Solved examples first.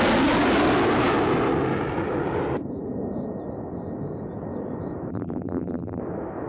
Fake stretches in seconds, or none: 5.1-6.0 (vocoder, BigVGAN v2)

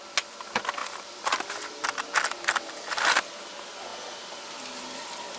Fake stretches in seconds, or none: none

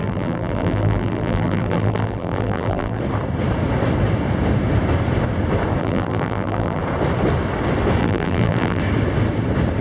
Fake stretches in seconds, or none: 0.0-3.0 (vocoder, BigVGAN v2); 5.8-6.8; 8.0-8.8

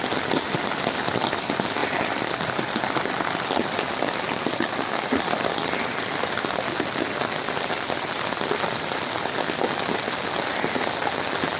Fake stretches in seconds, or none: none